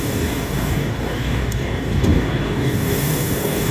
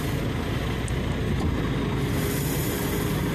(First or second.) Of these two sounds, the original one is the second